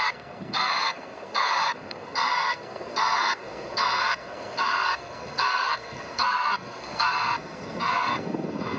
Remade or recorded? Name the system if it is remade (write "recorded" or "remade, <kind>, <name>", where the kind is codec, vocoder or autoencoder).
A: remade, codec, SNAC